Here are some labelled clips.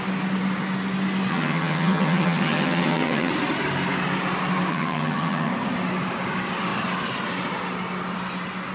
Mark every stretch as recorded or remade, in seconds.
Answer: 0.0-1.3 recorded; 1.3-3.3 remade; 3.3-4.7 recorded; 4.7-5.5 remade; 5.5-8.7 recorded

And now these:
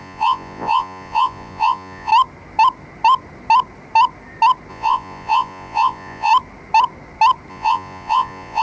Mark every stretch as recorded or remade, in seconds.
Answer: 0.0-2.1 remade; 2.1-4.7 recorded; 4.7-6.3 remade; 6.3-7.5 recorded; 7.5-8.6 remade

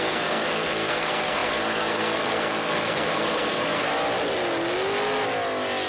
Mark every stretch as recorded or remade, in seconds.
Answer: 0.0-3.9 remade; 3.9-5.9 recorded

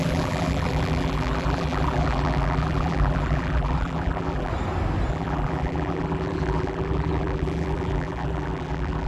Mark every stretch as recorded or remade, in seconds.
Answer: 0.0-4.5 remade; 4.5-5.1 recorded; 5.1-9.1 remade

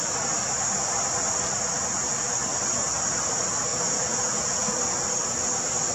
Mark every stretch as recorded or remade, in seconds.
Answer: 0.0-3.7 recorded; 3.7-4.7 remade; 4.7-5.9 recorded